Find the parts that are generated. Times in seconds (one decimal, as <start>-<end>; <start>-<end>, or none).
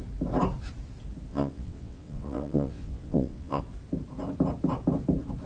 1.3-3.6